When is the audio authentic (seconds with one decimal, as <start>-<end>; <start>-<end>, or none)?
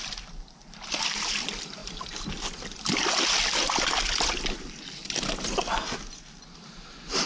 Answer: 0.0-7.3